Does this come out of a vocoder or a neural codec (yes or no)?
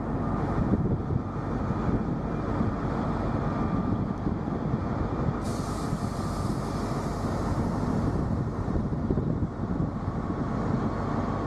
no